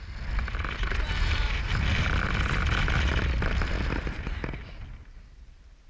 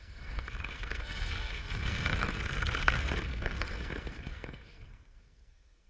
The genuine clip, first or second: first